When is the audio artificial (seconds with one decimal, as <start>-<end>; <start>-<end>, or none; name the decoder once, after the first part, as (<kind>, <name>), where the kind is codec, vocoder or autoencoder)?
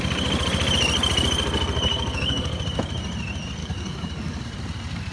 1.9-2.6 (codec, DAC); 3.6-4.5